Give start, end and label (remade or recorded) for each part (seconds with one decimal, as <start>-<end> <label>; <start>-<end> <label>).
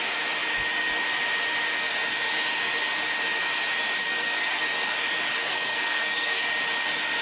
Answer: 0.0-4.0 recorded; 4.0-4.6 remade; 4.6-5.4 recorded; 5.4-6.4 remade; 6.4-7.2 recorded